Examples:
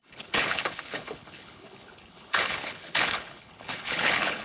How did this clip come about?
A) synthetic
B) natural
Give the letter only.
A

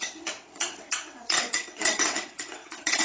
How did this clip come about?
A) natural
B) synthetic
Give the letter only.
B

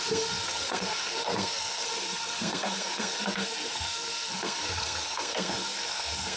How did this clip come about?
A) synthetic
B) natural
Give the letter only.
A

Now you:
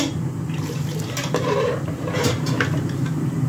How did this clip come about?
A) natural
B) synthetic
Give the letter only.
B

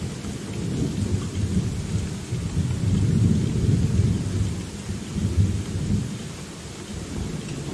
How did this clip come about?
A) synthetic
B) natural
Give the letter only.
B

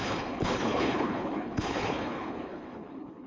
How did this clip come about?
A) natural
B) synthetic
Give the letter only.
B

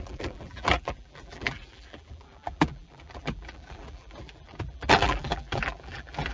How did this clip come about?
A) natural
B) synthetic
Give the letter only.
B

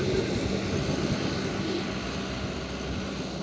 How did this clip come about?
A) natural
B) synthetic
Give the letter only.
A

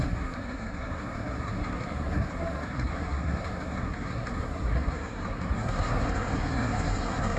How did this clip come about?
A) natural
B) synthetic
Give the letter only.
B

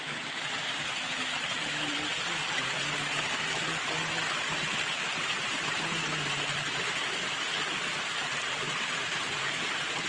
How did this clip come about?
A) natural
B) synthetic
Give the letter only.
A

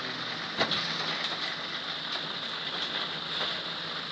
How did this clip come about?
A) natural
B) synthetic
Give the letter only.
A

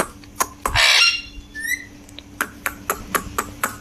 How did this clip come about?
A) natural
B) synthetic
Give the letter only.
A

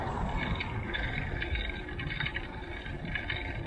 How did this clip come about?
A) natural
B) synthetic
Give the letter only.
A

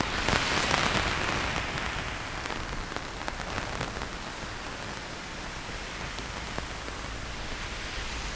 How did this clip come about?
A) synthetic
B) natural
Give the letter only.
B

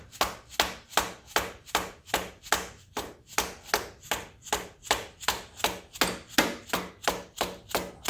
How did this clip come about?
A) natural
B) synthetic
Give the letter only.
A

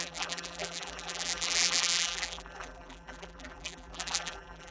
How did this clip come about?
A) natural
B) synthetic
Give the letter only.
B